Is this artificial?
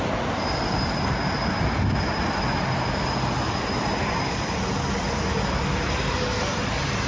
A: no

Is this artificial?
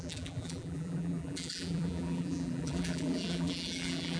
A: yes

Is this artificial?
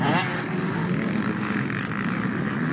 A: no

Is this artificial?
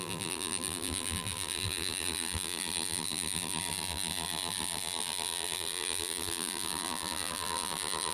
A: yes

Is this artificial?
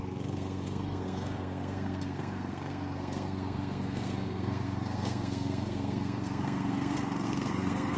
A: yes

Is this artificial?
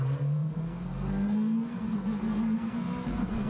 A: yes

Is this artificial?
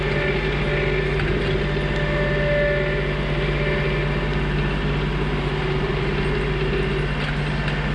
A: no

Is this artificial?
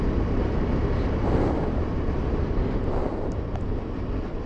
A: no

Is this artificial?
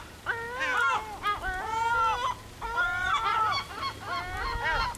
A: no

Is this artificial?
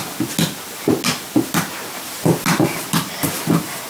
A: no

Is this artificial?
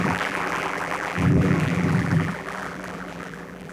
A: yes